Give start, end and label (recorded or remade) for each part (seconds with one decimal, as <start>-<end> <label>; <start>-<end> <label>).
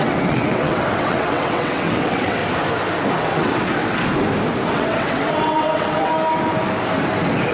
0.0-2.4 remade; 2.4-3.2 recorded; 3.2-3.8 remade; 3.8-4.7 recorded; 4.7-6.1 remade; 6.1-7.5 recorded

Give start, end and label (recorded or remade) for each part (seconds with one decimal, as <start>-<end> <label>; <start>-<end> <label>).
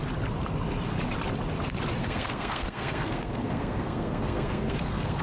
0.0-2.0 recorded; 2.0-5.2 remade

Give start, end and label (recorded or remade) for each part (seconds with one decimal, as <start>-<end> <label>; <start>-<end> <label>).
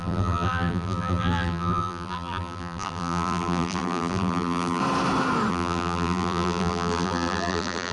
0.0-4.8 remade; 4.8-5.5 recorded; 5.5-7.9 remade